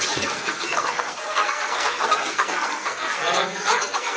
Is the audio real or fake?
fake